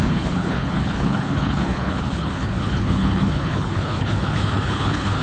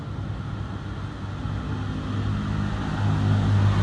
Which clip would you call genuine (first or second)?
second